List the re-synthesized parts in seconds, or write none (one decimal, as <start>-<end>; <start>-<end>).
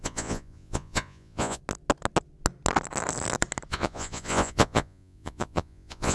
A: 0.0-1.6; 3.7-6.1